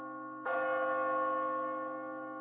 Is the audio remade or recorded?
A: recorded